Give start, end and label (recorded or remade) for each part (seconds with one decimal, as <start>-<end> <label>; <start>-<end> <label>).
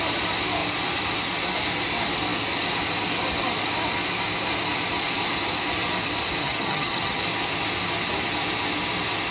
0.0-6.4 recorded; 6.4-7.2 remade; 7.2-9.3 recorded